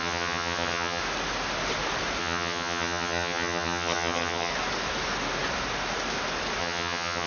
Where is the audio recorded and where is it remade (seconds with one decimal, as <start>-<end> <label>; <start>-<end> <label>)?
0.0-1.0 remade; 1.0-2.2 recorded; 2.2-4.5 remade; 4.5-6.6 recorded; 6.6-7.3 remade